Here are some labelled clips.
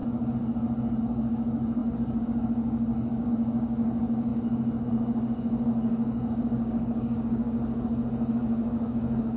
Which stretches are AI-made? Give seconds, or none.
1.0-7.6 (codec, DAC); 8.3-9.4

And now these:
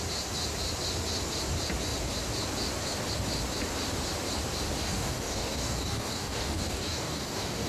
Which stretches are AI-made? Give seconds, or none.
4.8-7.7 (codec, DAC)

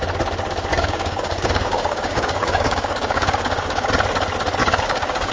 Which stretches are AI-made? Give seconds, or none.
0.7-3.9 (codec, DAC); 4.6-5.3

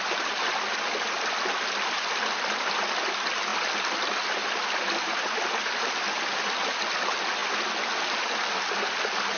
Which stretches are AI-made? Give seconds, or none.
none

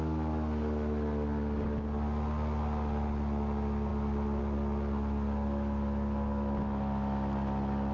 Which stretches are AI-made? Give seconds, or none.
none

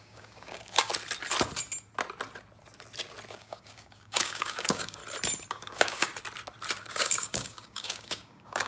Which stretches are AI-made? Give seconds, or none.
0.0-0.9 (codec, DAC); 3.3-5.0; 5.5-6.1; 6.8-8.7

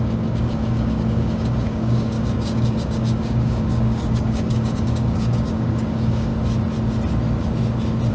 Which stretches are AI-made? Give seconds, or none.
0.0-6.3 (codec, DAC)

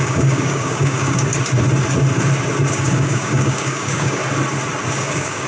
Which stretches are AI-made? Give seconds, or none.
0.0-1.3 (codec, DAC); 2.7-4.2; 4.9-5.5